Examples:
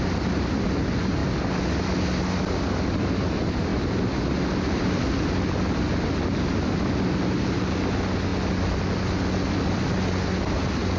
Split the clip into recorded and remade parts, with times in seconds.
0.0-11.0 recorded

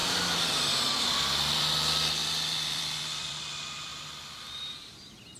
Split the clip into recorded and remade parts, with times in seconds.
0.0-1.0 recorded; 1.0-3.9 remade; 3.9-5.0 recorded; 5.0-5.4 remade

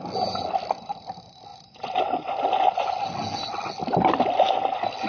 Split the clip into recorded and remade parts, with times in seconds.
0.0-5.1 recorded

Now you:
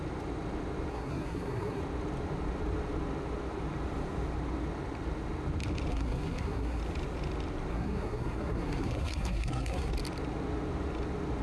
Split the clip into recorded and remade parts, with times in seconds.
0.0-0.9 recorded; 0.9-1.8 remade; 1.8-5.9 recorded; 5.9-6.8 remade; 6.8-7.7 recorded; 7.7-9.9 remade; 9.9-11.4 recorded

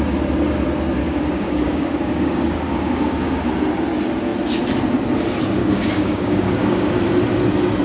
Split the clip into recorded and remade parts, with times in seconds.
0.0-1.0 recorded; 1.0-3.5 remade; 3.5-5.6 recorded; 5.6-7.0 remade; 7.0-7.8 recorded

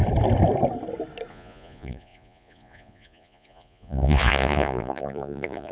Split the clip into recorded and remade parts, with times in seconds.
0.0-1.3 recorded; 1.3-5.7 remade

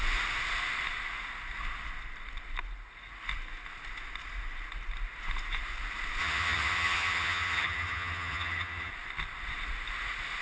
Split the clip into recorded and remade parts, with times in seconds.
0.0-6.2 recorded; 6.2-8.9 remade; 8.9-10.4 recorded

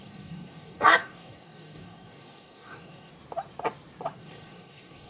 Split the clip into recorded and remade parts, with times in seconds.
0.0-3.1 remade; 3.1-4.2 recorded; 4.2-5.1 remade